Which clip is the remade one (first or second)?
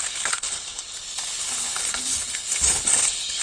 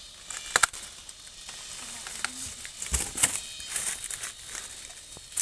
first